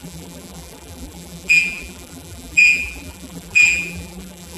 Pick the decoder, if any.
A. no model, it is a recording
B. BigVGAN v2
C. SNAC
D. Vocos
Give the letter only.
B